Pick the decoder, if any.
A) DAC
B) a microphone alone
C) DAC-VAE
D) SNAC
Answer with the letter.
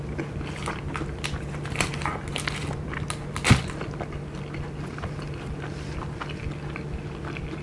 B